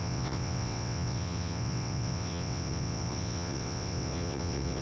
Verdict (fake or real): fake